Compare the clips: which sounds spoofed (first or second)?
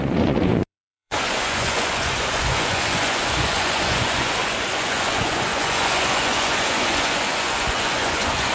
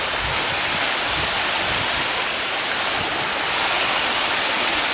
first